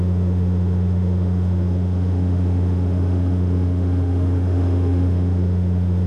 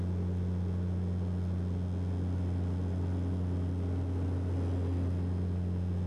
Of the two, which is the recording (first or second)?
second